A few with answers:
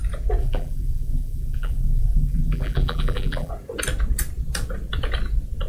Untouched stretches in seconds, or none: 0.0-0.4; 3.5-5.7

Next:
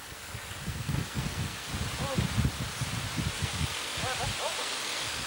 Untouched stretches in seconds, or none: 1.7-3.3; 4.0-4.6

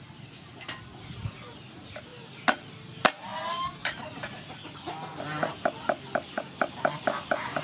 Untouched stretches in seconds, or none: 0.0-7.6

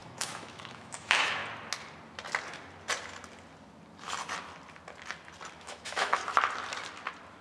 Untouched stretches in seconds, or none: 1.4-5.5; 6.2-7.4

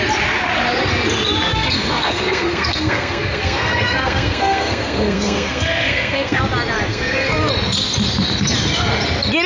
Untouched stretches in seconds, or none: 0.0-1.5; 6.4-6.9; 7.5-9.5

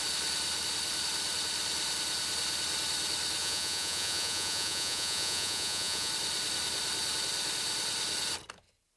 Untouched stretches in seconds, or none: 0.0-3.4; 6.1-9.0

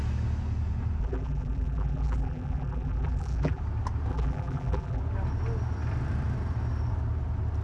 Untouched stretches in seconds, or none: 0.0-1.0; 3.6-4.1; 5.0-7.6

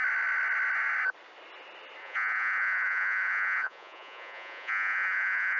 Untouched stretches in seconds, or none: 0.0-2.0